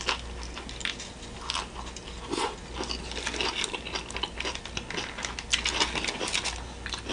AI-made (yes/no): no